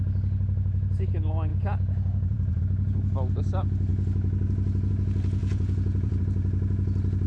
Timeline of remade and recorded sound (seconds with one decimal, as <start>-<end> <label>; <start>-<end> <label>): 0.0-1.5 recorded; 1.5-2.6 remade; 2.6-5.4 recorded; 5.4-6.2 remade; 6.2-7.3 recorded